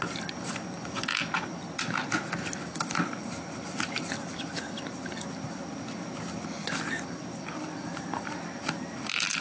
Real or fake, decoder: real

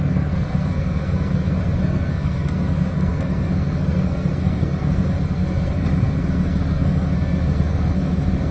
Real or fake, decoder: fake, codec, SNAC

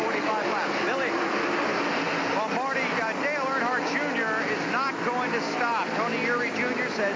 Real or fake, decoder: real